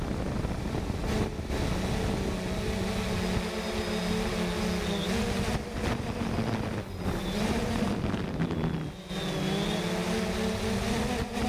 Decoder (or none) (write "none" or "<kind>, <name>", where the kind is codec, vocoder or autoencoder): none